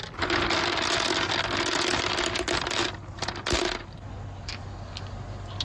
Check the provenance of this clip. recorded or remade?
recorded